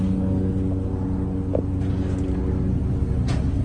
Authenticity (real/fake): real